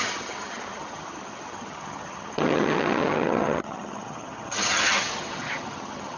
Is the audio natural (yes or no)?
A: no